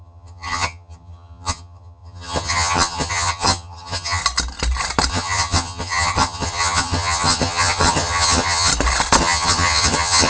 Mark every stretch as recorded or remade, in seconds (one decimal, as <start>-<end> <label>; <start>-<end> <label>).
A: 0.0-4.2 remade; 4.2-5.1 recorded; 5.1-8.7 remade; 8.7-9.2 recorded; 9.2-10.3 remade